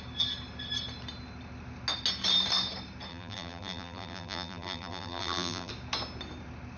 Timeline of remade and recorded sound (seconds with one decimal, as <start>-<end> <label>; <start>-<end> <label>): 0.0-3.1 recorded; 3.1-5.7 remade; 5.7-6.8 recorded